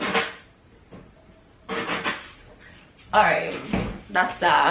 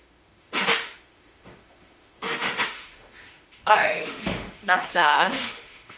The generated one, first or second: second